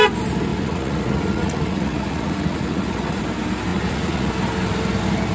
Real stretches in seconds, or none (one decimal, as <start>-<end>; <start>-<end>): 0.0-0.5; 3.2-3.7; 4.3-5.3